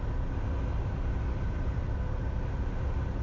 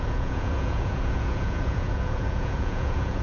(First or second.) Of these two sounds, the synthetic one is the second